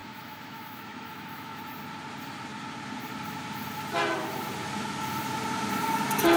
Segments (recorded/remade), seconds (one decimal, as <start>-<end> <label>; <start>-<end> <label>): 0.0-1.6 remade; 1.6-6.4 recorded